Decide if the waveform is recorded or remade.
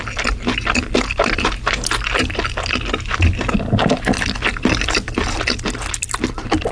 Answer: recorded